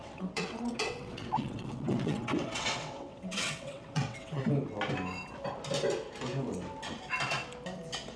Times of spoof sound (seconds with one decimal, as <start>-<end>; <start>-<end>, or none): 0.0-4.4